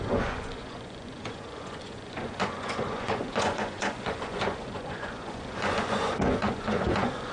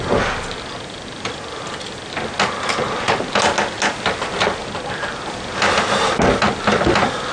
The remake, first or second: first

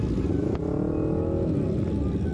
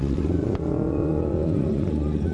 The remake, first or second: second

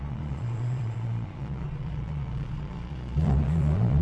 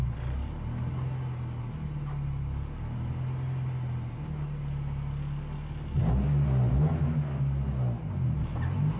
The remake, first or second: first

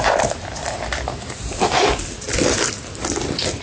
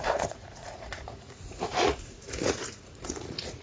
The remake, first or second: second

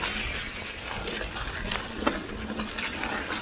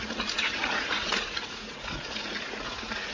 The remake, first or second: second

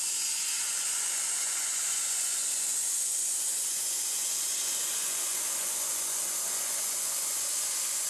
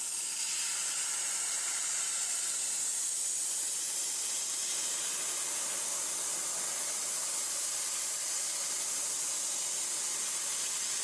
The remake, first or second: first